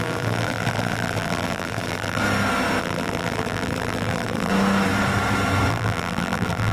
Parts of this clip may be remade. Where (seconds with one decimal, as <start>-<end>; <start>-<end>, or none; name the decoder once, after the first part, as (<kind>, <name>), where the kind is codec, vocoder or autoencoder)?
0.0-2.2 (vocoder, BigVGAN v2); 2.8-4.5; 5.7-6.7